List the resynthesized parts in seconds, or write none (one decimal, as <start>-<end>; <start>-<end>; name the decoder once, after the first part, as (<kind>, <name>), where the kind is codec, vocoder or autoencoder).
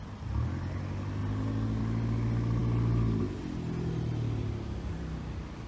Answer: none